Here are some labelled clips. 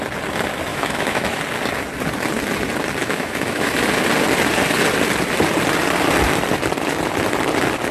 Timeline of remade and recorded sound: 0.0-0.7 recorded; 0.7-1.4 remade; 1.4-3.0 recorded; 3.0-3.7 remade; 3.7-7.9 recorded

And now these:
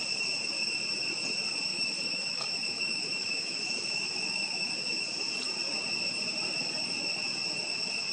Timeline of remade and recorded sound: 0.0-1.7 recorded; 1.7-4.7 remade; 4.7-8.1 recorded

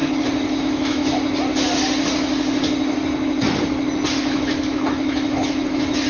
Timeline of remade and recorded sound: 0.0-0.6 recorded; 0.6-1.0 remade; 1.0-4.2 recorded; 4.2-6.1 remade

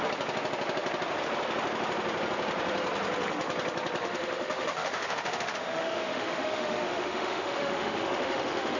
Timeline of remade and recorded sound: 0.0-4.0 recorded; 4.0-8.8 remade

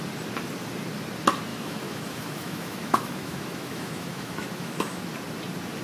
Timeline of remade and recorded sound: 0.0-1.5 recorded; 1.5-5.0 remade; 5.0-5.8 recorded

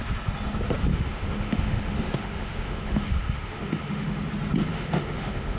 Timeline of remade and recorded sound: 0.0-0.9 recorded; 0.9-4.3 remade; 4.3-4.7 recorded; 4.7-5.6 remade

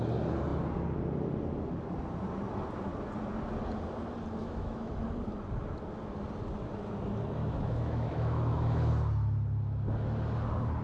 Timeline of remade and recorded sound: 0.0-4.4 recorded; 4.4-4.9 remade; 4.9-7.4 recorded; 7.4-8.9 remade; 8.9-10.8 recorded